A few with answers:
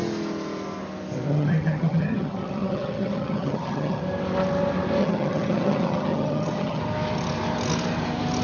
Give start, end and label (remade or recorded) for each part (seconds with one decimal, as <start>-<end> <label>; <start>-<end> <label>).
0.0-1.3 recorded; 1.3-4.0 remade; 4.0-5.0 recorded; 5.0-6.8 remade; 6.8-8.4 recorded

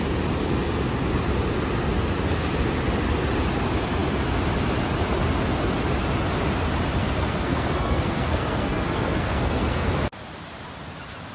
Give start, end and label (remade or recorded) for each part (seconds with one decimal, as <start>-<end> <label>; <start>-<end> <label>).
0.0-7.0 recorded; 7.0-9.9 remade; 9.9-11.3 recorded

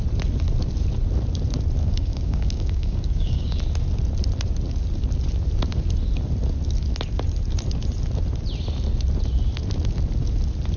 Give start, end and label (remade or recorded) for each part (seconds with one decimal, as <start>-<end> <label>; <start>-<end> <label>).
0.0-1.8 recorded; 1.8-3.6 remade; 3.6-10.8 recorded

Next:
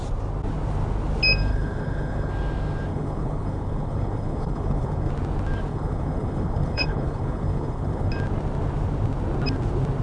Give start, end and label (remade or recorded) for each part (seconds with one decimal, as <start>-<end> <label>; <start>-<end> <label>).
0.0-1.5 recorded; 1.5-2.3 remade; 2.3-2.9 recorded; 2.9-5.1 remade; 5.1-5.7 recorded; 5.7-8.1 remade; 8.1-10.0 recorded

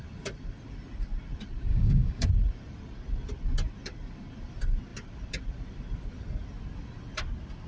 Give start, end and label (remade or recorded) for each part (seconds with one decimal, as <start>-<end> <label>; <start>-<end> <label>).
0.0-1.7 recorded; 1.7-2.3 remade; 2.3-7.7 recorded

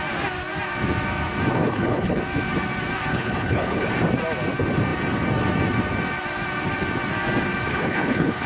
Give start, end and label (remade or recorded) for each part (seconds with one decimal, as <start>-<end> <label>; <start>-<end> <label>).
0.0-1.6 recorded; 1.6-2.2 remade; 2.2-3.1 recorded; 3.1-3.9 remade; 3.9-7.7 recorded; 7.7-8.5 remade